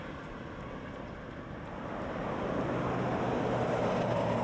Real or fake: real